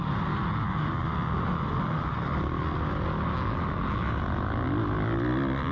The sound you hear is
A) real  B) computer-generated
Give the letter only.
A